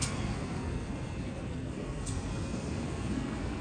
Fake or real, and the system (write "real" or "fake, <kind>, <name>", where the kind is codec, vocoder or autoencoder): fake, codec, SNAC